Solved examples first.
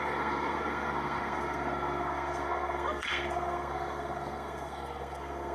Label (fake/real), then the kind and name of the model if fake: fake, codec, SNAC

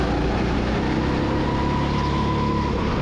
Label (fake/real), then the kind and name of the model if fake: real